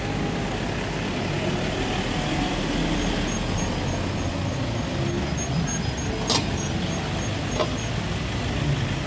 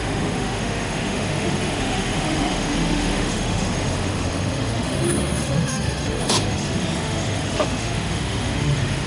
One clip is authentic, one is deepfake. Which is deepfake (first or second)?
second